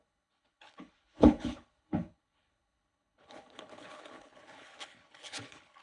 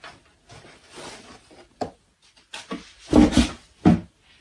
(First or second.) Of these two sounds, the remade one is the first